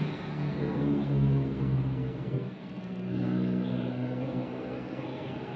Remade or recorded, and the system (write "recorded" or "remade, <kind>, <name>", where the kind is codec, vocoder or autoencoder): remade, codec, SNAC